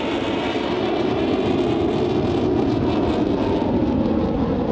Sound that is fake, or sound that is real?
real